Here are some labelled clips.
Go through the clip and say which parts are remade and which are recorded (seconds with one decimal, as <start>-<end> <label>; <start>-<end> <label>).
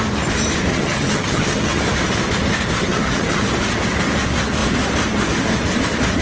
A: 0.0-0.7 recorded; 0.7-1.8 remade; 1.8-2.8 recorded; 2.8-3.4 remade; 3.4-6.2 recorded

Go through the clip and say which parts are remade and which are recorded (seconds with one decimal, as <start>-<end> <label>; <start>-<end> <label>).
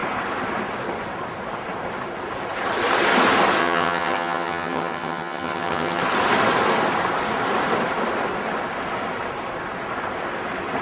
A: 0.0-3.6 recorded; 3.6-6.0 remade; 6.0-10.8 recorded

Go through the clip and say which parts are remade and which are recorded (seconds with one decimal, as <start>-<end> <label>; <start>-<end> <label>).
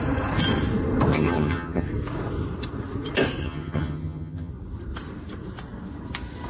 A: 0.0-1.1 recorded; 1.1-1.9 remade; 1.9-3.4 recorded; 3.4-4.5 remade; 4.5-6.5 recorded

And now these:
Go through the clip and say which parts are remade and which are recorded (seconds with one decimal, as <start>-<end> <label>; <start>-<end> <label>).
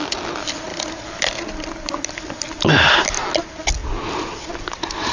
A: 0.0-5.1 recorded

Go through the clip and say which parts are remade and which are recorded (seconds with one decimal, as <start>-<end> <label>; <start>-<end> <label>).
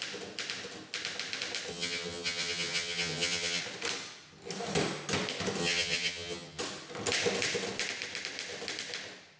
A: 0.0-1.7 recorded; 1.7-3.6 remade; 3.6-5.6 recorded; 5.6-6.6 remade; 6.6-9.4 recorded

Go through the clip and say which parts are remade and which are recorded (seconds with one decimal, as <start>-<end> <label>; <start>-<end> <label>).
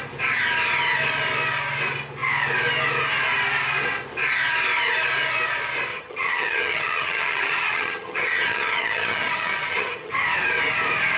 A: 0.0-5.9 recorded; 5.9-10.1 remade; 10.1-11.2 recorded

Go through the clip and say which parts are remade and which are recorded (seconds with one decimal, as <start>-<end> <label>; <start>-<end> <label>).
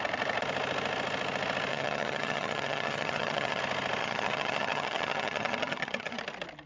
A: 0.0-1.7 recorded; 1.7-3.6 remade; 3.6-4.0 recorded; 4.0-6.2 remade; 6.2-6.7 recorded